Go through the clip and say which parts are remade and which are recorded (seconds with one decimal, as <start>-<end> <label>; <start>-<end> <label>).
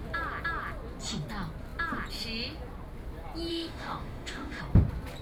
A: 0.0-3.5 recorded; 3.5-4.6 remade; 4.6-5.2 recorded